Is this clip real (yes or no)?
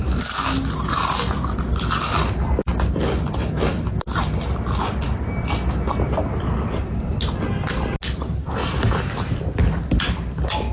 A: yes